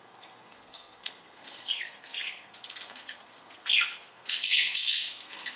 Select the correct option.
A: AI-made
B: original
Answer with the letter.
A